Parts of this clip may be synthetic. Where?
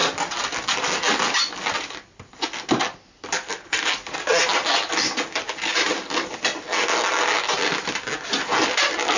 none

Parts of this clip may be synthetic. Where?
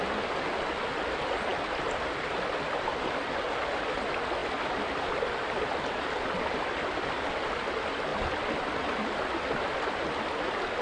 1.5-2.9 (vocoder, BigVGAN v2); 4.4-7.3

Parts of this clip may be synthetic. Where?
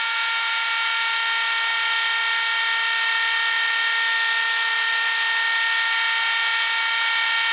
none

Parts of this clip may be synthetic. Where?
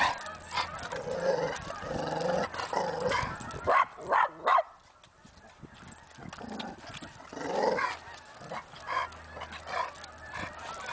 none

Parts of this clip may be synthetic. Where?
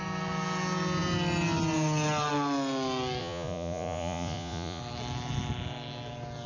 3.2-4.8 (vocoder, Vocos)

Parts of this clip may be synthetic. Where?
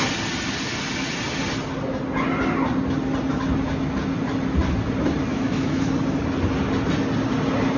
5.3-5.9 (autoencoder, DAC-VAE)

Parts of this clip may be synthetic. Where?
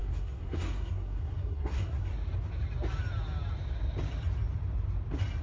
0.0-2.1 (codec, SNAC)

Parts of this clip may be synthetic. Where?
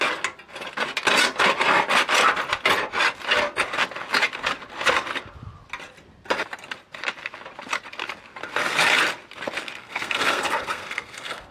9.8-11.5 (codec, SNAC)